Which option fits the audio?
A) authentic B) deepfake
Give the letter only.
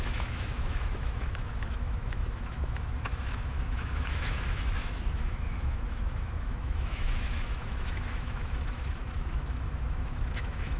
B